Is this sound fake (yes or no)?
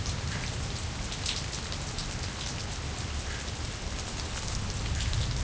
no